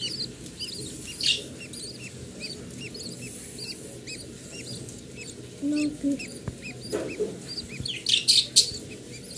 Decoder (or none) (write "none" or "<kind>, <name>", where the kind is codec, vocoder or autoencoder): none